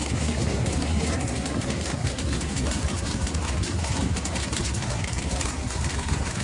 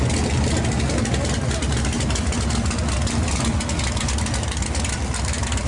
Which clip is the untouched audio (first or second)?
second